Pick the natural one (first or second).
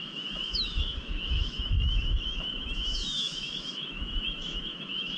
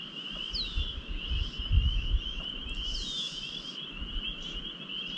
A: second